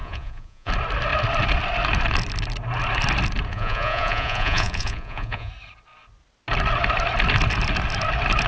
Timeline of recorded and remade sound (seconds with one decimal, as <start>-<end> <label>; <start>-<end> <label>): 0.0-0.7 remade; 0.7-3.5 recorded; 3.5-5.5 remade; 5.5-8.5 recorded